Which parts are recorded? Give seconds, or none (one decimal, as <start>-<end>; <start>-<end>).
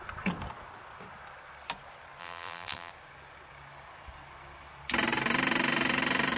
0.0-2.2; 2.9-6.4